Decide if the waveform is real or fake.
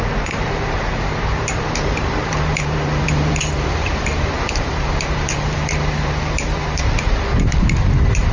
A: fake